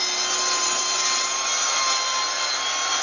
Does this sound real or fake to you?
real